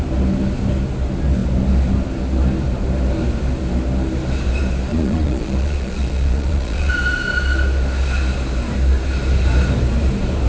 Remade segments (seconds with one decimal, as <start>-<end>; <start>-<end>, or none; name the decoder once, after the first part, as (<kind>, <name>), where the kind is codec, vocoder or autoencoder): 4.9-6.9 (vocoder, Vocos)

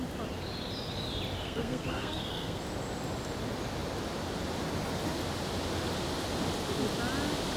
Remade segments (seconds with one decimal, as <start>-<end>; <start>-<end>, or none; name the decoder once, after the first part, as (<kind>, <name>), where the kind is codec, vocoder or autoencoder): 1.4-2.6 (codec, SNAC)

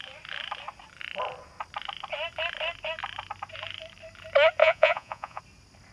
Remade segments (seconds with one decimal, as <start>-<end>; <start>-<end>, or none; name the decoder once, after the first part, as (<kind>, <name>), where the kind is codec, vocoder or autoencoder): 4.6-5.4 (vocoder, Vocos)

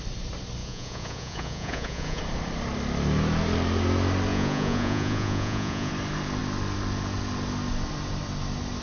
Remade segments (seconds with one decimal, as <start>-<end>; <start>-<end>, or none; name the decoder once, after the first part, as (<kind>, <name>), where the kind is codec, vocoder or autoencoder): 0.6-2.2 (vocoder, Vocos); 4.3-5.9

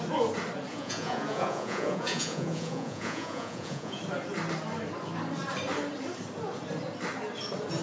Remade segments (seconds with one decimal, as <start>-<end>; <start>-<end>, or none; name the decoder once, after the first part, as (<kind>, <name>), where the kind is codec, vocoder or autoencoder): 0.7-4.0 (vocoder, Vocos)

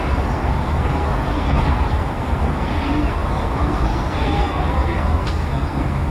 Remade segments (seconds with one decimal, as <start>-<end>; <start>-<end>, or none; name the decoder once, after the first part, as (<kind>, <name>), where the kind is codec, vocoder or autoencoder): 0.0-6.1 (codec, SNAC)

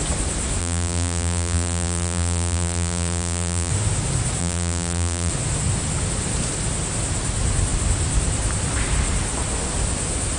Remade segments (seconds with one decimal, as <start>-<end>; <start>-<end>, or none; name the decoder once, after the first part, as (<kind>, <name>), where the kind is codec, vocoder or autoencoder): 0.6-3.7 (vocoder, BigVGAN v2); 4.4-5.3

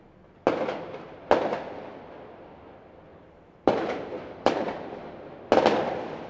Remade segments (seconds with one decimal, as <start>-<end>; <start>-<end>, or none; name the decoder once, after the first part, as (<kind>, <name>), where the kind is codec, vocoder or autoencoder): 3.1-5.4 (vocoder, BigVGAN v2)